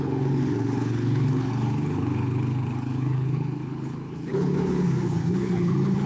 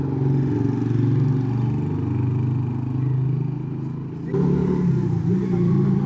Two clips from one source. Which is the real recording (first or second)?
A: second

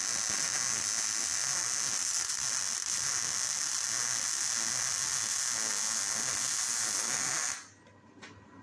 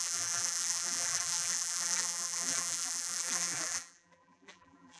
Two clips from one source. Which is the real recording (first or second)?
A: first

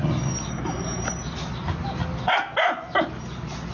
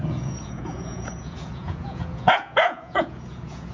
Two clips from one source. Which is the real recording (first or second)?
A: first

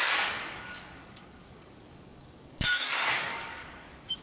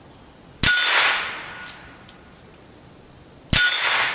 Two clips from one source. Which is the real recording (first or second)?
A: second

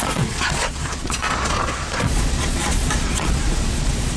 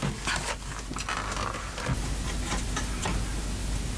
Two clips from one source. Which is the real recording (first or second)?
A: second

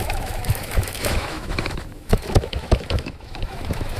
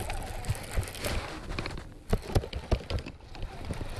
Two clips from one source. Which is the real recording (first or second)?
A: second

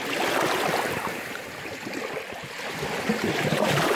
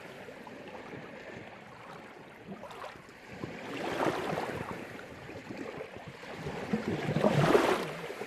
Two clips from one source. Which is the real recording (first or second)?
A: first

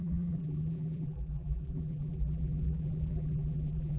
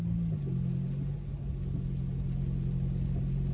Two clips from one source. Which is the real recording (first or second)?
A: second